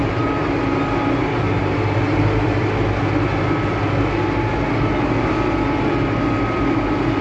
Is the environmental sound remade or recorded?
recorded